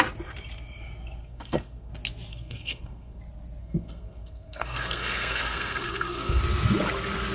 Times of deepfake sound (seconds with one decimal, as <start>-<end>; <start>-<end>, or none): 1.2-1.9; 2.3-3.2; 3.6-6.4